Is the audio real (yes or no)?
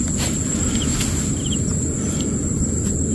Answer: no